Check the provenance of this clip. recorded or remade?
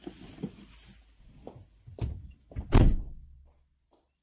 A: remade